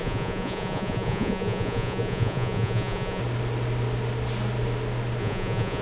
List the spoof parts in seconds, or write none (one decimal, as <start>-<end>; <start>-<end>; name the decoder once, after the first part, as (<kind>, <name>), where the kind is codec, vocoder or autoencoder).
0.0-3.2 (vocoder, Vocos); 5.2-5.8